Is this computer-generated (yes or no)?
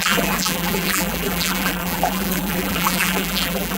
yes